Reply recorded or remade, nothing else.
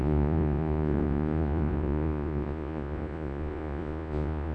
remade